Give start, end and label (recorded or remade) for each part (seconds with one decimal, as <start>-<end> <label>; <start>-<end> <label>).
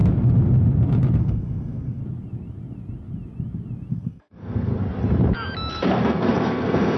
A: 0.0-1.2 recorded; 1.2-2.0 remade; 2.0-3.9 recorded; 3.9-4.7 remade; 4.7-5.7 recorded; 5.7-7.0 remade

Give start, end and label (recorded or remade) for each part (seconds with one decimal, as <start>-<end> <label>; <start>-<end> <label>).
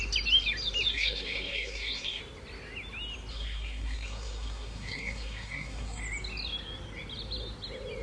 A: 0.0-0.9 recorded; 0.9-2.2 remade; 2.2-3.3 recorded; 3.3-6.0 remade; 6.0-8.0 recorded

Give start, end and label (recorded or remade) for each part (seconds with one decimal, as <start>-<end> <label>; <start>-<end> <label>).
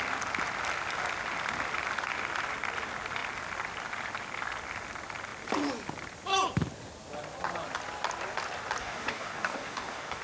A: 0.0-8.8 recorded; 8.8-10.2 remade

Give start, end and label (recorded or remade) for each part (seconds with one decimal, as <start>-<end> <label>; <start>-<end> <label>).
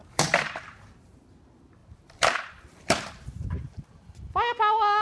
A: 0.0-1.2 remade; 1.2-1.8 recorded; 1.8-4.1 remade; 4.1-5.0 recorded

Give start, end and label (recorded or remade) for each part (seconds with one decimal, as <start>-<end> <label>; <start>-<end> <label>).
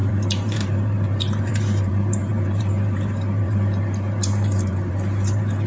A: 0.0-5.7 remade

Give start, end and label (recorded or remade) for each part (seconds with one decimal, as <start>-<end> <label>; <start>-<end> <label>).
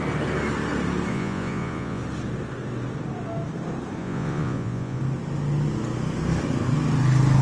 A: 0.0-1.1 recorded; 1.1-2.0 remade; 2.0-4.0 recorded; 4.0-5.0 remade; 5.0-7.4 recorded